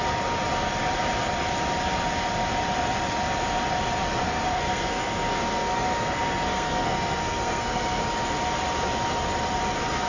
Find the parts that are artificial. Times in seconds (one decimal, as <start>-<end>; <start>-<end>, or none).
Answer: 4.2-8.0